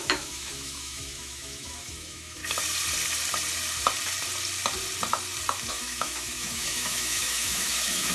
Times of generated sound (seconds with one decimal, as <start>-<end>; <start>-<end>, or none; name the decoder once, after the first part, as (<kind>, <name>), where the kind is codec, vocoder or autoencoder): 0.0-2.4 (autoencoder, DAC-VAE); 5.7-8.1